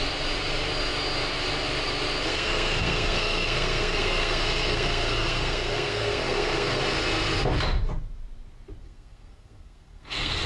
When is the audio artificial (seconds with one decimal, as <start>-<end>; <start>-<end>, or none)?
2.3-6.8; 8.8-10.5